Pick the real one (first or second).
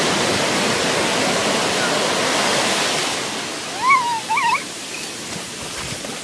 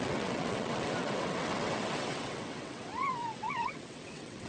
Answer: first